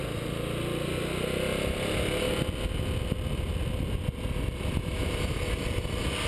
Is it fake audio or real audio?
real